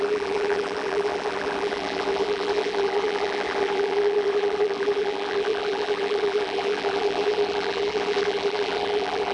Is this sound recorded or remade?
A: remade